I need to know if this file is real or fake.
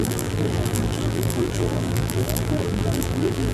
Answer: fake